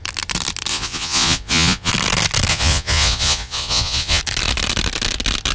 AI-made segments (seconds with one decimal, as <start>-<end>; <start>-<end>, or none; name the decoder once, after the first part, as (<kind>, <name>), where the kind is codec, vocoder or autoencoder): 0.7-1.9 (vocoder, Vocos); 2.5-4.2